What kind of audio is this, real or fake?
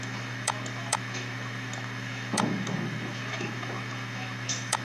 fake